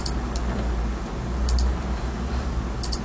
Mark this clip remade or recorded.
recorded